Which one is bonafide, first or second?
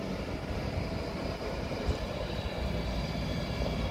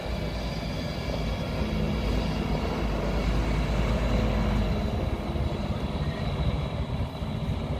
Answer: second